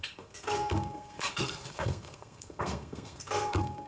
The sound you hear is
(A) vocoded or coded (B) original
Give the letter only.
A